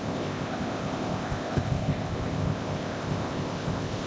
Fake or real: fake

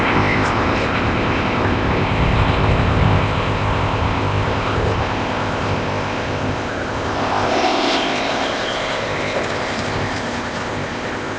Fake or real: fake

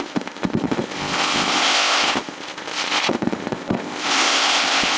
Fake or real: fake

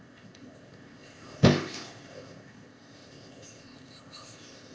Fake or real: fake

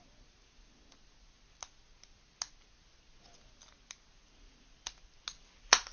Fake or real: real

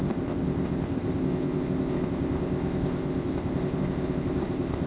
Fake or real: fake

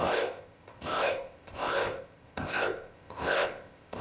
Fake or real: fake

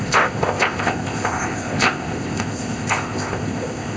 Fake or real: fake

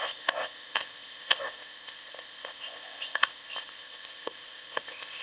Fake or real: fake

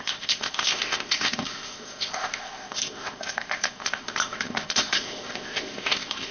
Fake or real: fake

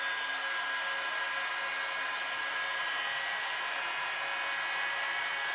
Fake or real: real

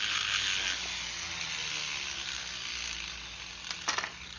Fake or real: real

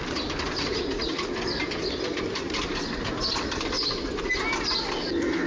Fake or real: real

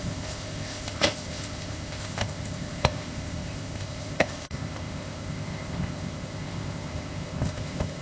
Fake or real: fake